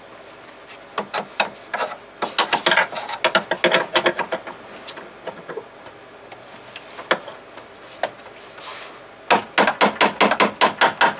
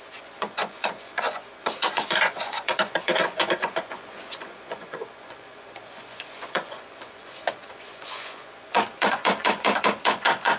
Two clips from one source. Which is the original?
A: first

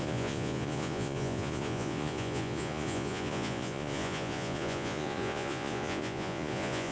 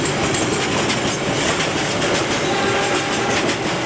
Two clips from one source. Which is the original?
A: second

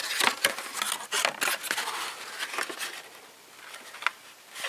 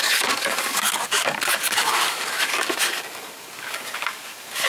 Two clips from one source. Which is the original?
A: first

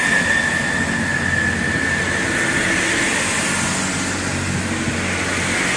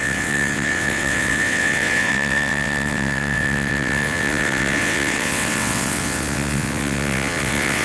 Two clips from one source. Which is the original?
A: first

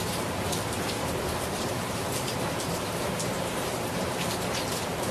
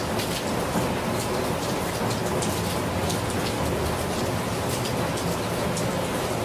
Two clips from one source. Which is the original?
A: second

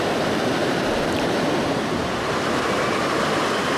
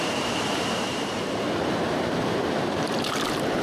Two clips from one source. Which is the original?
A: first